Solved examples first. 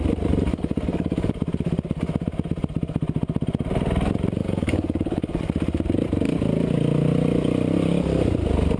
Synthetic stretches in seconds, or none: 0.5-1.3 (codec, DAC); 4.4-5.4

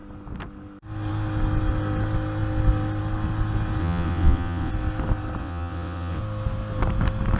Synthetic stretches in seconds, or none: 3.8-4.7 (vocoder, WaveNeXt); 5.4-6.2

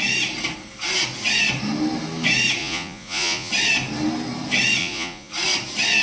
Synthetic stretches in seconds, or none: 2.6-3.5 (vocoder, Vocos); 4.8-5.3

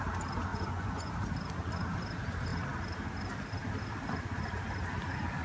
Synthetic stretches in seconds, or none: 0.5-1.1 (vocoder, Vocos)